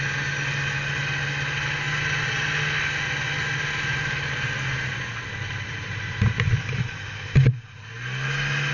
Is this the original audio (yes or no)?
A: yes